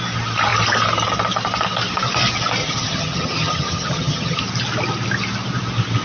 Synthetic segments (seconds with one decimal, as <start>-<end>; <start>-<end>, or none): 2.6-4.4